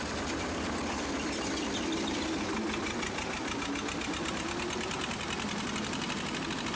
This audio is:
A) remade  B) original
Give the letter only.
B